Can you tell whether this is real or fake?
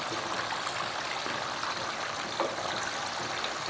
real